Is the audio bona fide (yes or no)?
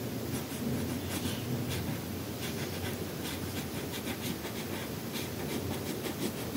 yes